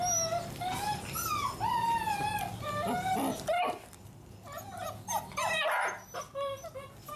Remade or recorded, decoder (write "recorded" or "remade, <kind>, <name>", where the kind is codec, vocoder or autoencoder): recorded